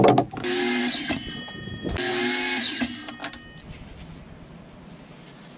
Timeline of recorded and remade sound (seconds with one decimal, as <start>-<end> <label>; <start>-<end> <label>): 0.0-5.6 recorded